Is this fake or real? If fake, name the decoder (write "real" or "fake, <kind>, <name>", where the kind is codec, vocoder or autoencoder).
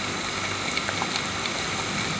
real